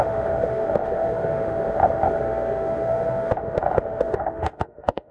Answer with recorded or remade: remade